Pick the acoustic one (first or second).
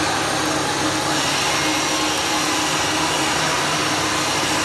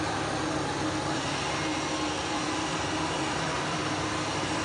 first